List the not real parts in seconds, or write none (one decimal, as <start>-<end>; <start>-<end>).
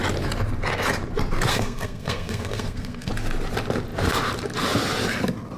1.5-3.1